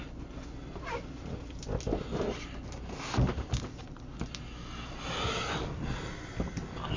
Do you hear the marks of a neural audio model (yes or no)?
no